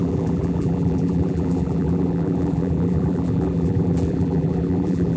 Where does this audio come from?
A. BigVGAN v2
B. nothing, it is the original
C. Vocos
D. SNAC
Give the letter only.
A